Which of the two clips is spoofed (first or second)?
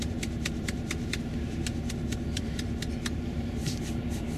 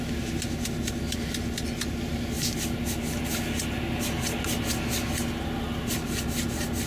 first